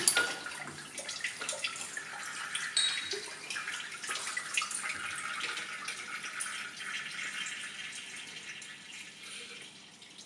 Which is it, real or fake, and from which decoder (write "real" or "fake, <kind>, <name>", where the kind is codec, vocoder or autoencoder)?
real